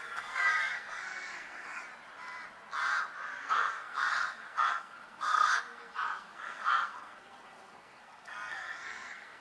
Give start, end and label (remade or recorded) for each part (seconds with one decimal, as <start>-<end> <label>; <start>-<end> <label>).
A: 0.0-1.8 remade; 1.8-3.4 recorded; 3.4-9.4 remade